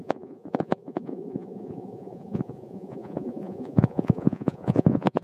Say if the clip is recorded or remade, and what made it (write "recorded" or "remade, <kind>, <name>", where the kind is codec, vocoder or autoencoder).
remade, vocoder, Vocos